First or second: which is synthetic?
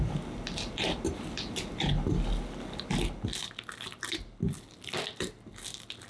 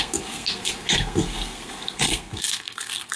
second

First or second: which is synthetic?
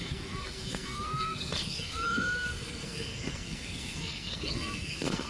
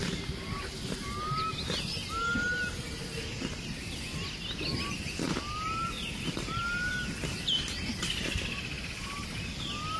first